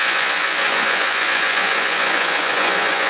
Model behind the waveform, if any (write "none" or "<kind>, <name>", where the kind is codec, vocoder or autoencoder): vocoder, Vocos